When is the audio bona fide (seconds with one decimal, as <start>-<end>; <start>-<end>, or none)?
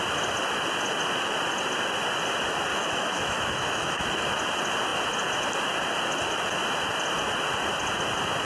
0.0-2.7; 4.1-8.4